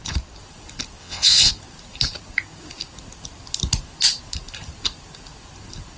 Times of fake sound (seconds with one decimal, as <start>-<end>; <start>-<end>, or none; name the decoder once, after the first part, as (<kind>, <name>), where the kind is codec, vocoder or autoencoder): 1.0-1.5 (vocoder, WaveNeXt)